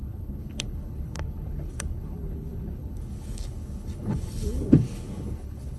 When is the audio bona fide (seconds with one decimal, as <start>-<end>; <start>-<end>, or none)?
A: none